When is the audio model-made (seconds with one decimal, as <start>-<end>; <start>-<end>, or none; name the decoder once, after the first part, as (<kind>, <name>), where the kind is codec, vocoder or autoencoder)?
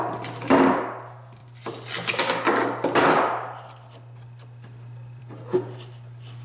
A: none